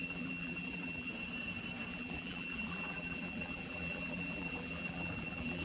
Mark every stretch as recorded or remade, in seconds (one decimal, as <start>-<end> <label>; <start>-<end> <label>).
0.0-1.1 remade; 1.1-1.9 recorded; 1.9-5.6 remade